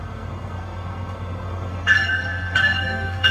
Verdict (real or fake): fake